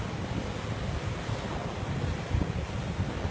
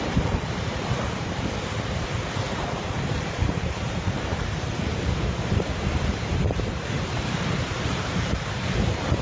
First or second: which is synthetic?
second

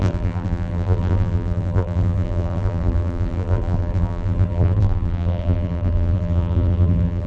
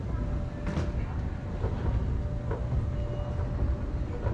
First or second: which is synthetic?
first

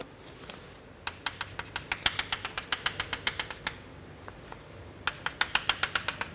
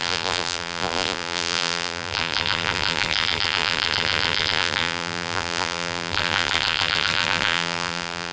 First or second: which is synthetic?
second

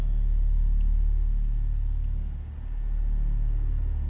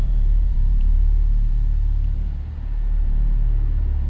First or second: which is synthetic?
second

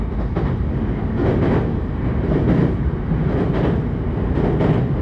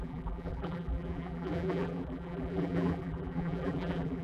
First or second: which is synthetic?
second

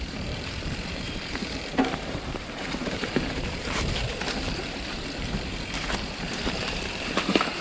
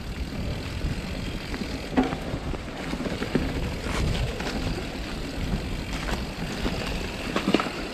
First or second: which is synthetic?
first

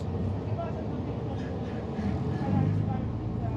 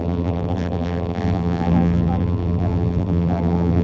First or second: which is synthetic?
second